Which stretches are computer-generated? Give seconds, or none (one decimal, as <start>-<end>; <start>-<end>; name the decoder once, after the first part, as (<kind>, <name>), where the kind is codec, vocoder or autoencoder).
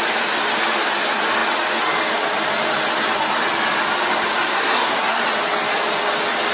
4.5-5.2 (codec, SNAC)